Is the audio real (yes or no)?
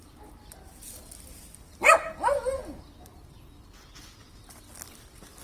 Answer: yes